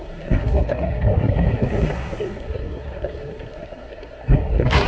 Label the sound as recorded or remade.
remade